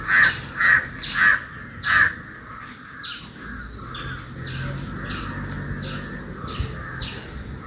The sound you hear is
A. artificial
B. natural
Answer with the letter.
B